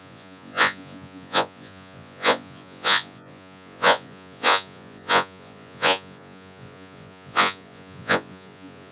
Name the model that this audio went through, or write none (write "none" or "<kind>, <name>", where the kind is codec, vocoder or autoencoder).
vocoder, Vocos